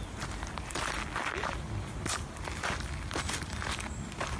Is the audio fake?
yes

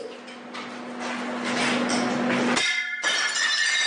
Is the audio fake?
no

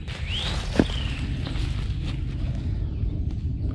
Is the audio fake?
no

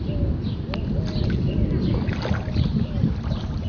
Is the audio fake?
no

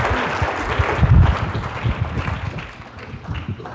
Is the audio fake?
no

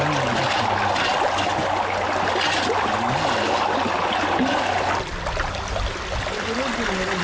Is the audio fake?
no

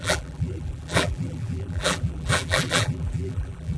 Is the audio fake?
yes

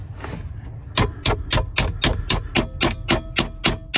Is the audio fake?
no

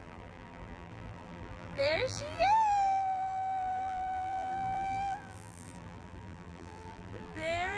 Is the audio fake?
yes